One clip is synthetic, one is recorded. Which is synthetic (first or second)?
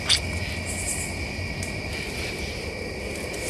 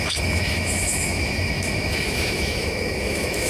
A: second